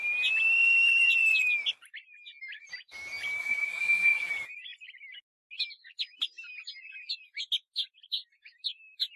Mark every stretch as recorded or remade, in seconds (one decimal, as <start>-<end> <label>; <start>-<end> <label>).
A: 0.0-3.4 recorded; 3.4-4.3 remade; 4.3-9.2 recorded